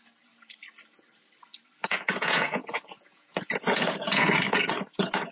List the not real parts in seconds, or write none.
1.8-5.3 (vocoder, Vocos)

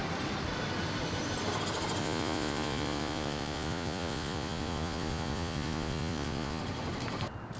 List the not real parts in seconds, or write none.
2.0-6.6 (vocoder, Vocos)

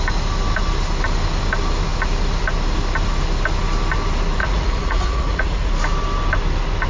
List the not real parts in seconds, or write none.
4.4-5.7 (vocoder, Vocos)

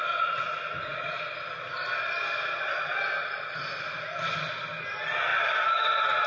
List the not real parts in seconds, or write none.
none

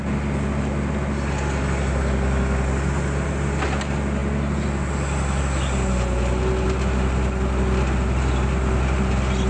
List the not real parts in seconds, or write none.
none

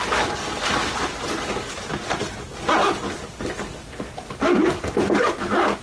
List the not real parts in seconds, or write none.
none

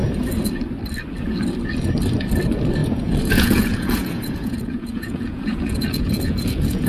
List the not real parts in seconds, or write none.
2.8-6.9 (vocoder, Vocos)